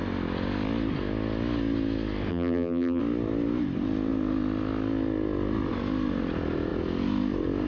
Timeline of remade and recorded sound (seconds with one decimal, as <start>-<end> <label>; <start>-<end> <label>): 0.0-2.3 recorded; 2.3-3.0 remade; 3.0-7.7 recorded